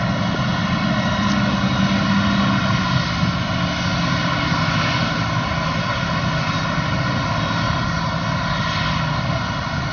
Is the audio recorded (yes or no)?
yes